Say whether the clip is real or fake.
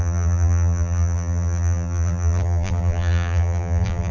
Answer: fake